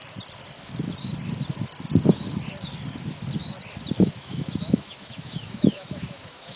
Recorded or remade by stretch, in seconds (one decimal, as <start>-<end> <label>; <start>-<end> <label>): 0.0-4.0 recorded; 4.0-6.6 remade